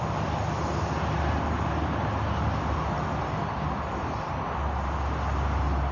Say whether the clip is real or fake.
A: real